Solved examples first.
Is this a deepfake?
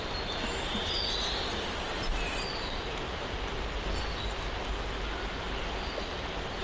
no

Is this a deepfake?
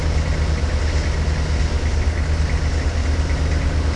no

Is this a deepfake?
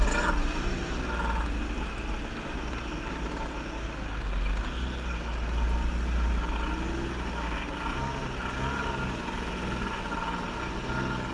no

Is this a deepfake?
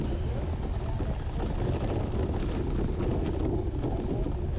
no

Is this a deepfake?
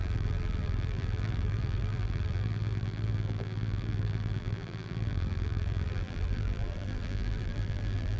yes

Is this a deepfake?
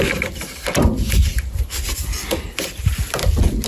no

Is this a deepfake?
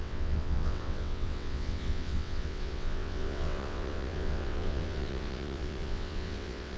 yes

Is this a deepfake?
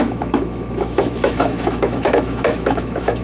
yes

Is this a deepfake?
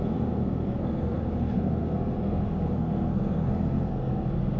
yes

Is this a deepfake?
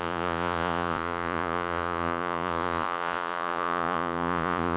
yes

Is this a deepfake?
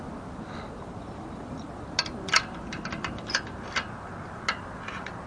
no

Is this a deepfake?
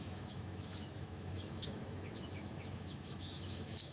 yes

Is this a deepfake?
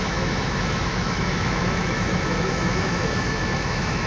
yes